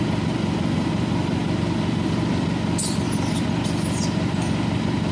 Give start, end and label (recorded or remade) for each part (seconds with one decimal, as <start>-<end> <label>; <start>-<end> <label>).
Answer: 0.0-5.1 recorded